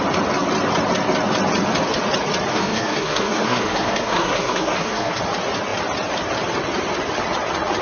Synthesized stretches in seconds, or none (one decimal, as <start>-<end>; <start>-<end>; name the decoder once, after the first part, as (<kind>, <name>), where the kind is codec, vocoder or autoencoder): 2.5-5.2 (codec, SNAC)